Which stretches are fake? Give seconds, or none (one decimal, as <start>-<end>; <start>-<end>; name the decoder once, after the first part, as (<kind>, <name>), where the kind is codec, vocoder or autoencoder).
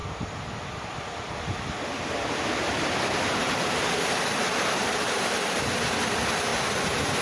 0.0-3.9 (vocoder, BigVGAN v2); 4.8-5.6; 6.5-7.2